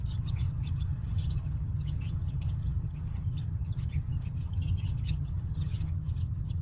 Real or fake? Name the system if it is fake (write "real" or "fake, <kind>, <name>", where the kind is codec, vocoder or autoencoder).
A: fake, vocoder, HiFi-GAN